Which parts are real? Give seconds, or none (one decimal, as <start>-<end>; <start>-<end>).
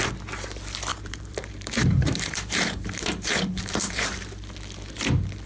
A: 0.0-0.9; 4.2-5.5